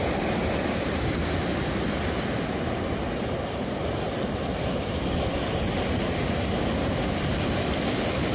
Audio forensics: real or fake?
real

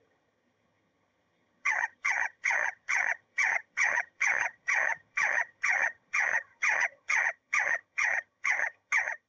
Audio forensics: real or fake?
fake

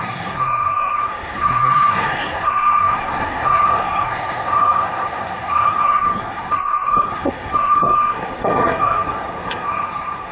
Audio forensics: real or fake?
fake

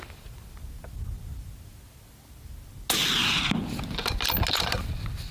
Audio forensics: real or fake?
real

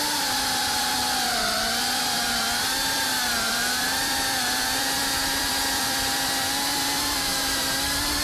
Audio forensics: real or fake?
fake